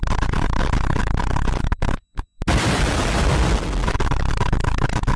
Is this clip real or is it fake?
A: real